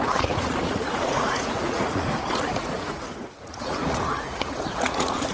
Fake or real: fake